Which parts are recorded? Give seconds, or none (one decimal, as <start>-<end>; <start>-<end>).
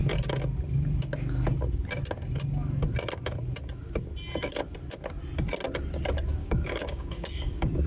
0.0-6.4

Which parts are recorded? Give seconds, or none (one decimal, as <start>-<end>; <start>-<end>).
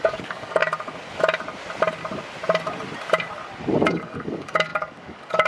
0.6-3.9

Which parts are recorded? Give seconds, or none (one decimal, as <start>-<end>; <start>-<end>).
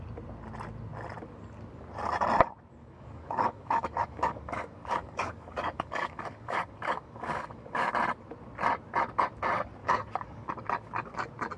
0.0-2.8; 7.9-9.8; 10.5-11.6